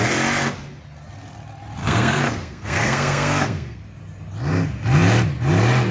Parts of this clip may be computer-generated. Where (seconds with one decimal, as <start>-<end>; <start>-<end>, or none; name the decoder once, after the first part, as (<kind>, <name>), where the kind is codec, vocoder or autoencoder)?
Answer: 1.8-3.8 (codec, SNAC)